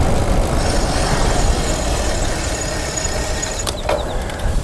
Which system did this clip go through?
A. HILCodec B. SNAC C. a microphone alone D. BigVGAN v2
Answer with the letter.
C